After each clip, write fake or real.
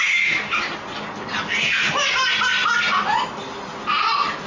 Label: real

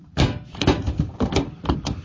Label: real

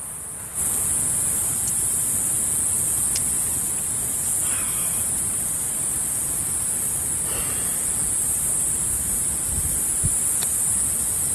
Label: real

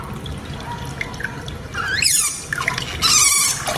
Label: real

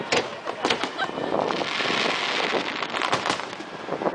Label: real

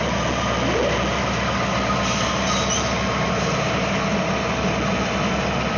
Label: real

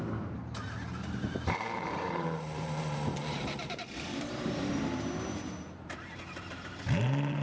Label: fake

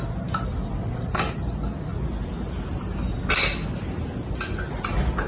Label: real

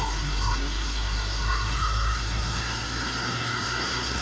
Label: fake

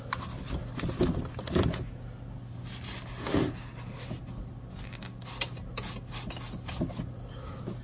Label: real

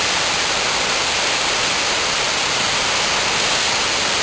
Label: real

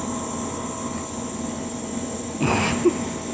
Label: real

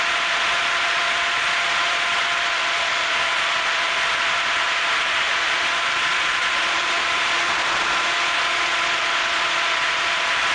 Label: fake